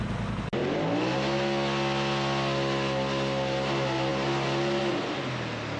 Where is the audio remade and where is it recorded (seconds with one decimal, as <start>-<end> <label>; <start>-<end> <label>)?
0.0-5.8 recorded